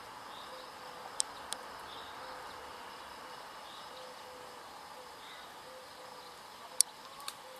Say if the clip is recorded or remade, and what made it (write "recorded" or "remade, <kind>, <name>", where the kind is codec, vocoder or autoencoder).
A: recorded